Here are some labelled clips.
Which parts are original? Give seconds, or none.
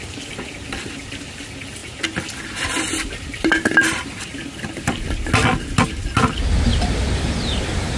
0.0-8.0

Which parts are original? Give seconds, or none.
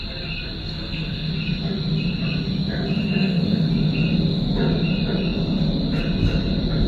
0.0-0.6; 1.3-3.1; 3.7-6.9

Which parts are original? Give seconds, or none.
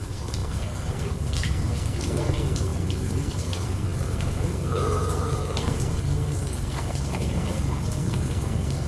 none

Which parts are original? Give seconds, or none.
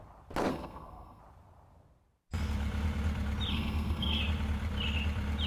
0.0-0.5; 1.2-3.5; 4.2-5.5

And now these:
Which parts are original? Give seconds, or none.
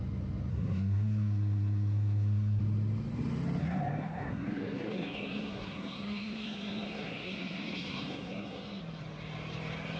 0.0-0.5; 2.6-3.6; 8.8-10.0